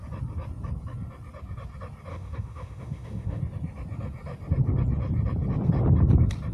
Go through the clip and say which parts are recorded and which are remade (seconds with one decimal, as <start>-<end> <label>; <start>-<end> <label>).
0.0-2.1 recorded; 2.1-3.4 remade; 3.4-6.5 recorded